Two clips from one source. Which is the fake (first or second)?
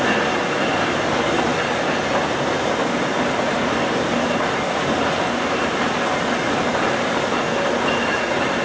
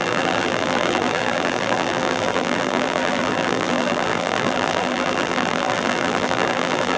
second